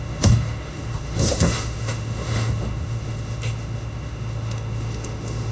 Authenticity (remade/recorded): remade